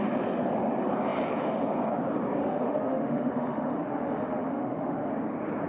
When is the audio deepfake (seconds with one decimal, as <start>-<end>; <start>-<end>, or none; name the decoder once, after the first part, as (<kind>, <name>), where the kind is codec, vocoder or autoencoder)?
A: 2.4-5.1 (autoencoder, DAC-VAE)